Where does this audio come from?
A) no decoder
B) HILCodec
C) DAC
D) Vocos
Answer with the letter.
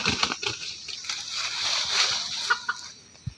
A